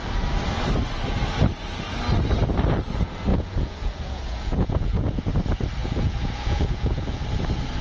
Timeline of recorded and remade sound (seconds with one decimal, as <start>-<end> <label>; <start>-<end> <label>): 0.0-3.3 recorded; 3.3-5.3 remade; 5.3-5.8 recorded; 5.8-7.2 remade; 7.2-7.8 recorded